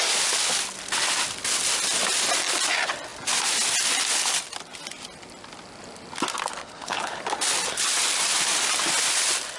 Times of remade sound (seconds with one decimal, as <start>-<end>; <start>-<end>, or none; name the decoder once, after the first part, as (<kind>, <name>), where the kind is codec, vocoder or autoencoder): 6.6-7.2 (codec, HILCodec)

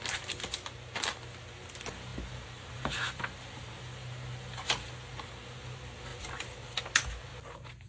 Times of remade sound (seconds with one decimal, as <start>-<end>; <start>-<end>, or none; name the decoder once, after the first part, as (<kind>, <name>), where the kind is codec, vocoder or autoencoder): 2.1-3.2 (vocoder, BigVGAN v2); 6.1-6.8